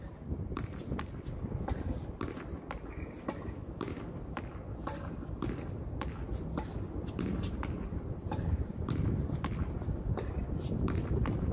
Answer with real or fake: real